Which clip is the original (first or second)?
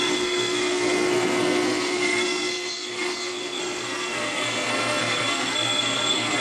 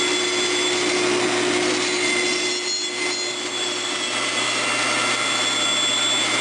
second